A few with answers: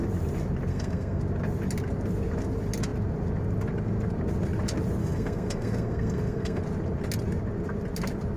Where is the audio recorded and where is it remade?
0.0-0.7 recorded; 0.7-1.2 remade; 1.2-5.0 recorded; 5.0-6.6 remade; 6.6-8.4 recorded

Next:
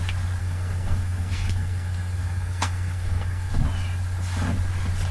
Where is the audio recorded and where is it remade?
0.0-0.4 recorded; 0.4-3.5 remade; 3.5-5.1 recorded

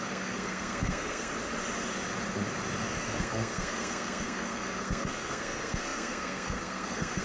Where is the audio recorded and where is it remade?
0.0-1.3 remade; 1.3-3.2 recorded; 3.2-7.2 remade